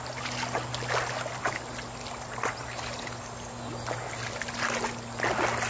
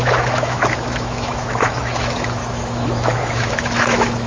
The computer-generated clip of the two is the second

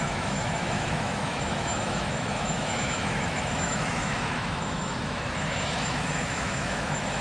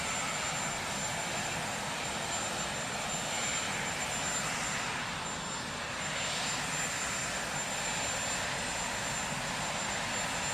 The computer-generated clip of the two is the first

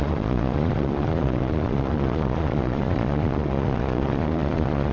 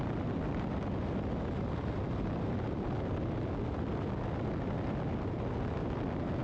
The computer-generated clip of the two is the first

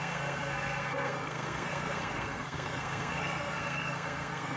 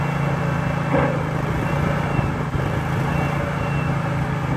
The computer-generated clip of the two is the first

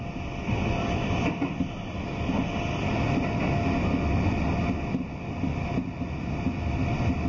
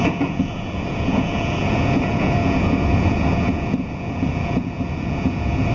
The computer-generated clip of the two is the second